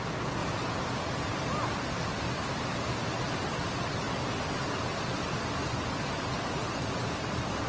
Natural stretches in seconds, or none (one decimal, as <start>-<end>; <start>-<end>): 0.0-7.7